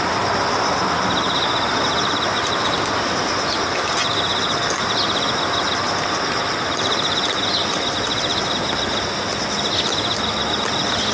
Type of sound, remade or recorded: recorded